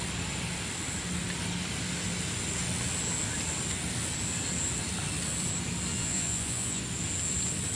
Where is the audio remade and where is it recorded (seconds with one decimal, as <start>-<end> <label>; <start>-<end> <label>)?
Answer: 0.0-5.9 recorded; 5.9-6.8 remade; 6.8-7.8 recorded